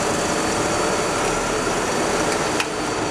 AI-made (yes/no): no